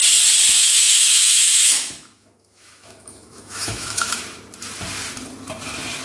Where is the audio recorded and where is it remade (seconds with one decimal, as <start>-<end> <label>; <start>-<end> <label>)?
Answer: 0.0-0.6 recorded; 0.6-4.2 remade; 4.2-6.0 recorded

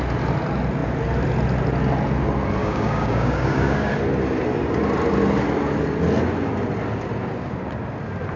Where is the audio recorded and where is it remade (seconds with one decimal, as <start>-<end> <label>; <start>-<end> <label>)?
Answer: 0.0-2.6 recorded; 2.6-3.9 remade; 3.9-8.4 recorded